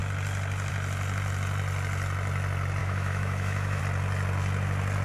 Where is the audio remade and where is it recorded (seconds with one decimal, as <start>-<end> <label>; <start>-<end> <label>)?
0.0-2.8 recorded; 2.8-3.8 remade; 3.8-5.0 recorded